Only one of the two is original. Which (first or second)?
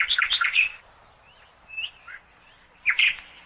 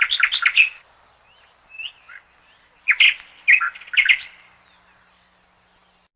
second